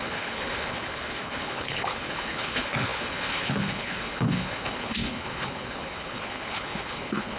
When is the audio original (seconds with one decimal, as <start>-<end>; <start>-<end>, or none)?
none